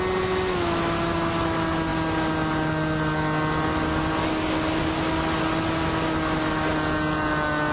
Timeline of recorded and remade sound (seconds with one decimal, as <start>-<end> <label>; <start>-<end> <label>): 0.0-7.7 recorded